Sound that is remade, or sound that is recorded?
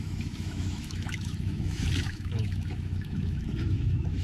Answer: remade